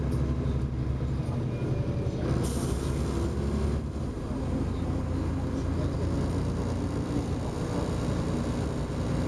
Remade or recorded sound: recorded